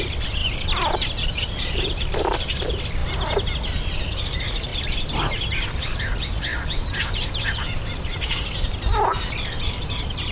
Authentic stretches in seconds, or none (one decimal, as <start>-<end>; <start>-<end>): 3.0-3.7